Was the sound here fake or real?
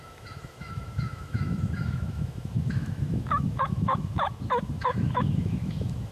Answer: fake